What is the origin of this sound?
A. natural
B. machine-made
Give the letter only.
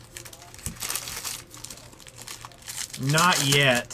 A